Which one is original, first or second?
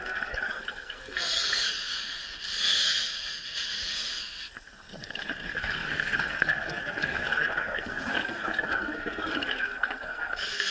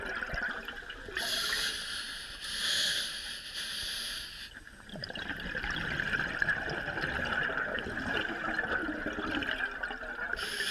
second